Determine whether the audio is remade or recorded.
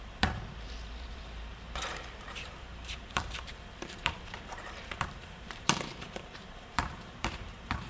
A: remade